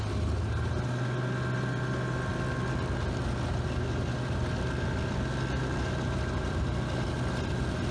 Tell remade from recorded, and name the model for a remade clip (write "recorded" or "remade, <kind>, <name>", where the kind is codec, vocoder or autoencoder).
recorded